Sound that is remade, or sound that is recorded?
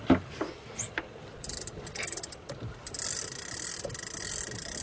recorded